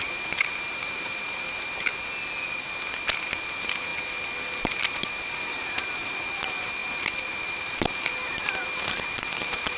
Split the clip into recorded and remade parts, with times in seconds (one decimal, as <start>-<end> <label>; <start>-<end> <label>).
0.0-1.9 remade; 1.9-3.2 recorded; 3.2-3.9 remade; 3.9-4.8 recorded; 4.8-9.8 remade